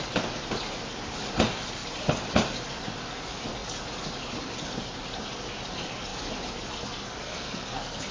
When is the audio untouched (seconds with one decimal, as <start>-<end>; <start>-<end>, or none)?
0.0-7.2